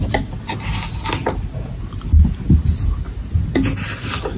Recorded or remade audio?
recorded